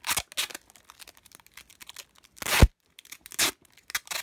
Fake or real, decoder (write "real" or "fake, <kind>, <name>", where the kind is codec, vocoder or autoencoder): real